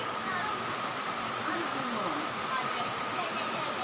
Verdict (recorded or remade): recorded